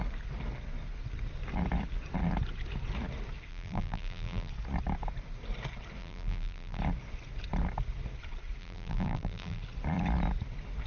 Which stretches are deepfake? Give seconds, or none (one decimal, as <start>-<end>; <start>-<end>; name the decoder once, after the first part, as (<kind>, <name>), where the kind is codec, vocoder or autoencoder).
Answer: 3.5-4.5 (vocoder, BigVGAN v2); 6.0-6.8; 8.6-9.6